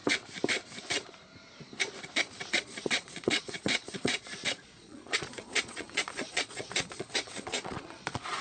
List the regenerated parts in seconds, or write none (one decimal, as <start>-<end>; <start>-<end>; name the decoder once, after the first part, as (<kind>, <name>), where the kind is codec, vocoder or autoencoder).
2.5-8.4 (vocoder, Vocos)